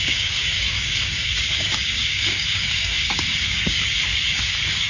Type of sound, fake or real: fake